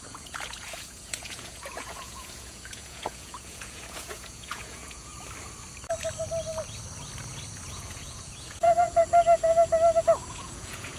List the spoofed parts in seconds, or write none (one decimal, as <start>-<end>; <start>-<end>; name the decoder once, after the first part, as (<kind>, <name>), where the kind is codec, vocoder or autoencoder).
0.0-5.1 (vocoder, Vocos); 7.7-9.0; 10.3-11.0

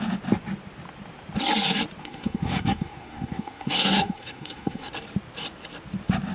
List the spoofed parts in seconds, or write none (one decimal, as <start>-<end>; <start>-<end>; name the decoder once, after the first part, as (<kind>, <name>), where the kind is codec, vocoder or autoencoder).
2.0-4.9 (codec, SNAC)

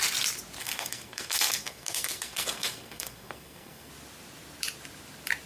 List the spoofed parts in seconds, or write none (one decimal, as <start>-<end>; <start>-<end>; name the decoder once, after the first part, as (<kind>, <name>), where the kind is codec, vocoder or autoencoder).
0.6-3.9 (codec, SNAC)

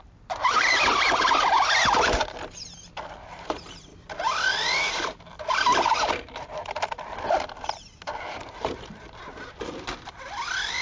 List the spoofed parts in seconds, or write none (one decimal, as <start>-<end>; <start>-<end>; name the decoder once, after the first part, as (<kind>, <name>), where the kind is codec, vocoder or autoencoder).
0.0-3.9 (vocoder, BigVGAN v2); 4.9-10.8